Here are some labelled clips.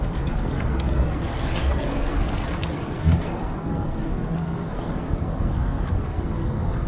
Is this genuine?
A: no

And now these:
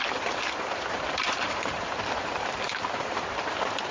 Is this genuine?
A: no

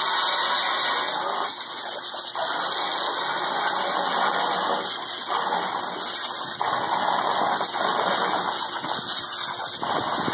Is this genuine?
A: yes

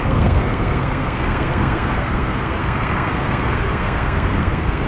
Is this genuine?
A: no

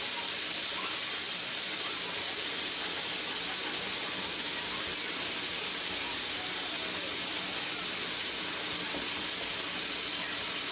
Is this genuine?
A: yes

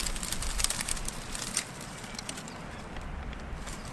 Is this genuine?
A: no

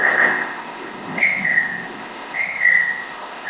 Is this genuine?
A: no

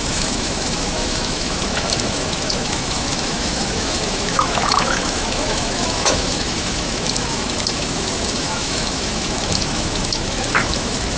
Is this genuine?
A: no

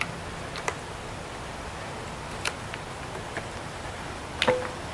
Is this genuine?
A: yes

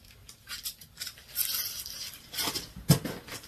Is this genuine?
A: yes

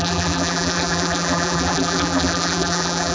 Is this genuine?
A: no